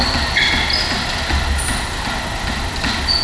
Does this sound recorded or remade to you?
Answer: recorded